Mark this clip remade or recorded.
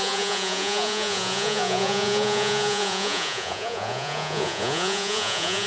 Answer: remade